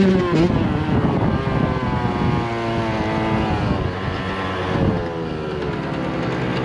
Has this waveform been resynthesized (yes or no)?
no